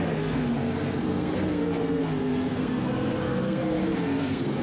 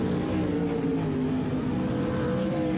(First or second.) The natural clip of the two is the second